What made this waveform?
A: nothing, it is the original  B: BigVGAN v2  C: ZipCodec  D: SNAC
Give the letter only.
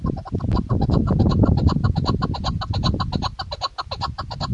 A